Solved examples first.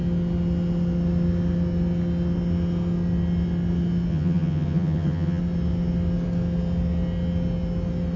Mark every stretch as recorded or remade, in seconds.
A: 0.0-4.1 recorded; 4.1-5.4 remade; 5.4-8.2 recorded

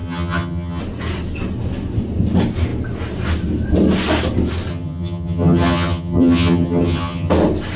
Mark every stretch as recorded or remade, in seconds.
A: 0.0-0.8 remade; 0.8-4.7 recorded; 4.7-7.3 remade; 7.3-7.8 recorded

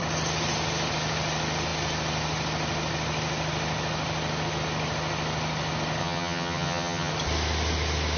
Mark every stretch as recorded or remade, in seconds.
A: 0.0-6.0 recorded; 6.0-7.1 remade; 7.1-8.2 recorded

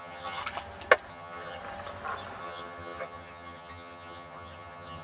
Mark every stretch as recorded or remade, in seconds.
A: 0.0-0.4 remade; 0.4-1.1 recorded; 1.1-1.6 remade; 1.6-2.4 recorded; 2.4-5.0 remade

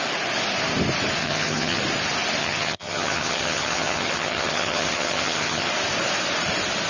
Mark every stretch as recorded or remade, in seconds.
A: 0.0-1.2 recorded; 1.2-1.8 remade; 1.8-2.4 recorded; 2.4-5.7 remade; 5.7-6.9 recorded

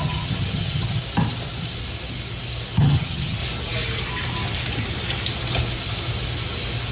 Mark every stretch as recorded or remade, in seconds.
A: 0.0-1.0 remade; 1.0-2.8 recorded; 2.8-3.4 remade; 3.4-6.9 recorded

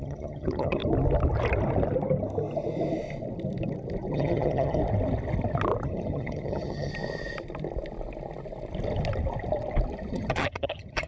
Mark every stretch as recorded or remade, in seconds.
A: 0.0-0.8 remade; 0.8-4.1 recorded; 4.1-4.8 remade; 4.8-5.8 recorded; 5.8-6.9 remade; 6.9-10.1 recorded; 10.1-11.1 remade